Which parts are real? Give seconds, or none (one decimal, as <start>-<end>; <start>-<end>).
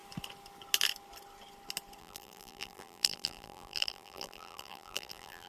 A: 0.0-2.0